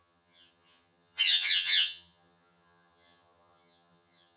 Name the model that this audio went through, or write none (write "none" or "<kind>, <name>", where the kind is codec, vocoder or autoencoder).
vocoder, HiFi-GAN